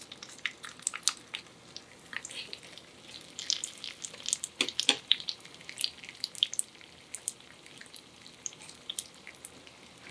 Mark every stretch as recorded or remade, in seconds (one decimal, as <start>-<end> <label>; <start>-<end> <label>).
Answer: 0.0-10.1 recorded